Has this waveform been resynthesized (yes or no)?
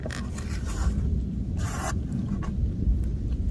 no